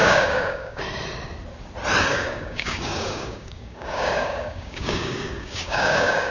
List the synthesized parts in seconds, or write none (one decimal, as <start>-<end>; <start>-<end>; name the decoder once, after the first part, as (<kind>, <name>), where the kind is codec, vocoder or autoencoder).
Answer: 0.0-0.8 (codec, DAC); 2.1-6.3